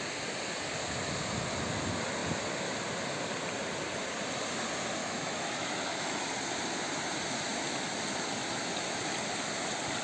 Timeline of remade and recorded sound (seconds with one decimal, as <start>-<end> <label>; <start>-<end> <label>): 0.0-5.0 recorded; 5.0-6.2 remade; 6.2-10.0 recorded